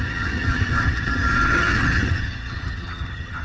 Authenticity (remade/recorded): remade